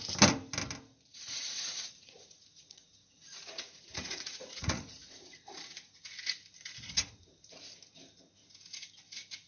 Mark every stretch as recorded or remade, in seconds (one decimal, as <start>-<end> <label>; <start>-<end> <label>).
0.0-1.1 recorded; 1.1-6.0 remade; 6.0-9.5 recorded